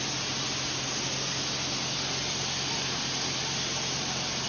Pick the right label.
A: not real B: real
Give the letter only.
B